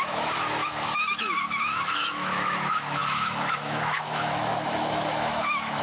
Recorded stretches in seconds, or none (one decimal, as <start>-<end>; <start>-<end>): none